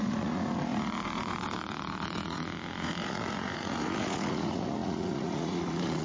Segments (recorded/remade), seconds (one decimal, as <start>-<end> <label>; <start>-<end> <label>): 0.0-6.0 remade